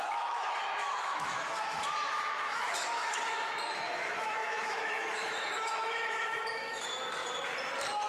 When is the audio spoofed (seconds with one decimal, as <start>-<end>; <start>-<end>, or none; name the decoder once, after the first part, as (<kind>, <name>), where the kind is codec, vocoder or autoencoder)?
0.0-7.2 (autoencoder, DAC-VAE)